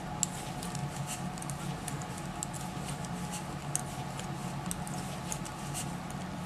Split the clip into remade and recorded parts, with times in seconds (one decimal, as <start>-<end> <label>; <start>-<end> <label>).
0.0-6.5 recorded